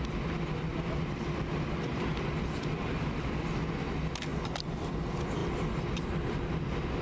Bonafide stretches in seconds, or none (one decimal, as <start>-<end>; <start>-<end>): 0.0-0.7; 3.4-7.0